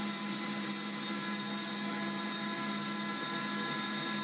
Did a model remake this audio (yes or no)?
no